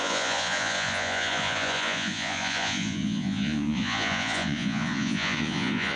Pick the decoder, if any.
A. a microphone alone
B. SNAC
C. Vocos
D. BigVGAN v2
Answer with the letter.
C